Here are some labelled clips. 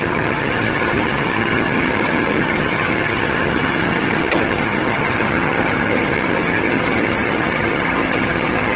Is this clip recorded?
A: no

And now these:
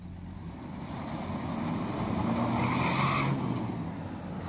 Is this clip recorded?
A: yes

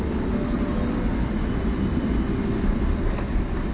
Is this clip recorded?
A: yes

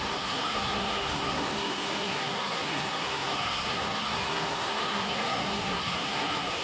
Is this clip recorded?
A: no